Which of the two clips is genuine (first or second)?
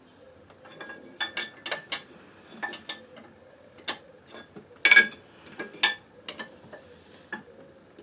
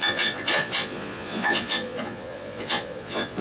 first